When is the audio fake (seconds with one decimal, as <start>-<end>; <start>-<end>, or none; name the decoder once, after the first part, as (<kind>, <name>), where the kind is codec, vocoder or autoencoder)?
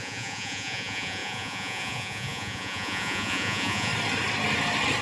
0.0-3.9 (vocoder, Vocos)